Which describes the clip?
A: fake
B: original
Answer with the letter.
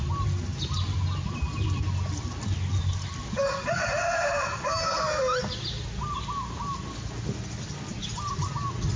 B